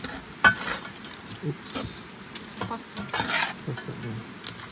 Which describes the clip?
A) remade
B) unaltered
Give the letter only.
B